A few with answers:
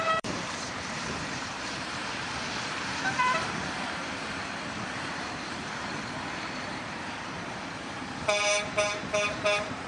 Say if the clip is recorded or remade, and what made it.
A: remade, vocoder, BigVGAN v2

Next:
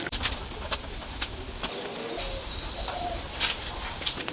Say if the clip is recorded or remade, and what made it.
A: remade, vocoder, BigVGAN v2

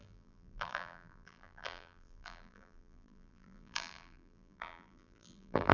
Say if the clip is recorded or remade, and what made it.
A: remade, vocoder, BigVGAN v2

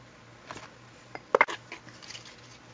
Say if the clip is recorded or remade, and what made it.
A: recorded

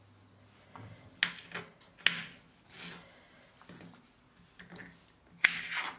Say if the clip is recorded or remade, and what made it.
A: recorded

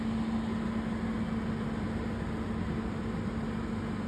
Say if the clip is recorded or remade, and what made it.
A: recorded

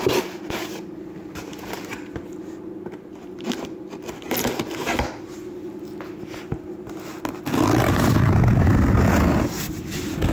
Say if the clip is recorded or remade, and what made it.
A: recorded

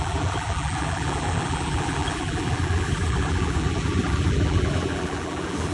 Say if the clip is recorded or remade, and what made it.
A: remade, vocoder, BigVGAN v2